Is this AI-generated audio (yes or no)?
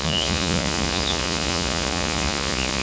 yes